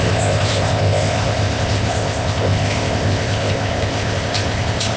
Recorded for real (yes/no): no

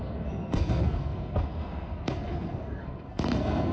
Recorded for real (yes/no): no